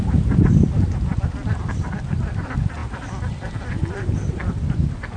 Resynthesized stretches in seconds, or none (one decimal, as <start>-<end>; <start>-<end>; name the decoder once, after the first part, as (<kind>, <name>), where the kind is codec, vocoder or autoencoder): none